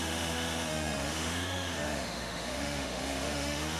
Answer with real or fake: fake